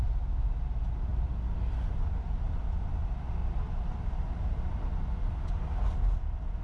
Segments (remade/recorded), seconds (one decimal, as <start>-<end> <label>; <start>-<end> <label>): 0.0-3.4 recorded; 3.4-4.8 remade; 4.8-6.6 recorded